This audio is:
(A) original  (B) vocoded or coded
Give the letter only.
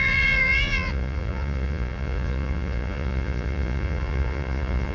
B